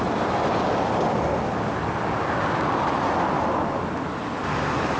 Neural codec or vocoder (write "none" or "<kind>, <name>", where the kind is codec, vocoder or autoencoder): none